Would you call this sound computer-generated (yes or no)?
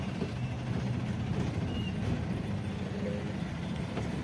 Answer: no